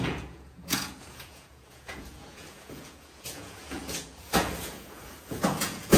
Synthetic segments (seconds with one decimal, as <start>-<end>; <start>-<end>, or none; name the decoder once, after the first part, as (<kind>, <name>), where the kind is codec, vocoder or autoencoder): 0.0-6.0 (vocoder, Vocos)